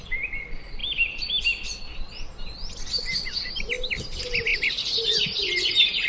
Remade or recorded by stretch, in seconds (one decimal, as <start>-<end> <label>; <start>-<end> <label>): 0.0-6.1 recorded